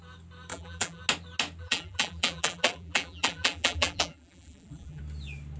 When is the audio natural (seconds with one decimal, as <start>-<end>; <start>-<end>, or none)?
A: 0.0-0.5; 1.0-1.6; 5.0-5.6